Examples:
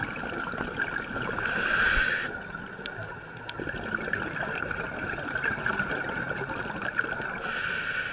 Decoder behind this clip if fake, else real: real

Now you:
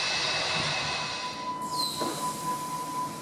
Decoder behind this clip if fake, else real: real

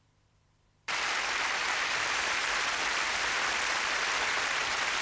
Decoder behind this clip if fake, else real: fake, vocoder, BigVGAN v2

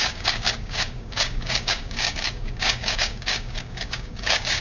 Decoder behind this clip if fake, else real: fake, codec, DAC